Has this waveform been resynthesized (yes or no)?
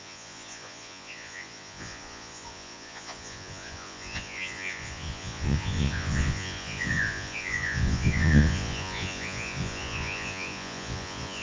yes